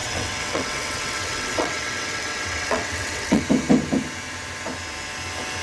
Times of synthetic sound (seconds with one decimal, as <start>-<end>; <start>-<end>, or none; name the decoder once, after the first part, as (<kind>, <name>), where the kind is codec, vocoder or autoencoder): 0.0-3.4 (vocoder, WaveNeXt)